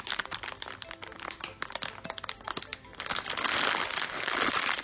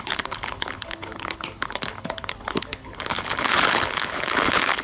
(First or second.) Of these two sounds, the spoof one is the second